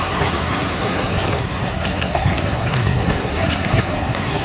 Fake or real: fake